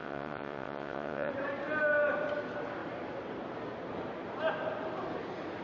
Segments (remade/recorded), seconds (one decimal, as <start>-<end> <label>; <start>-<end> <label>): 0.0-1.3 remade; 1.3-5.6 recorded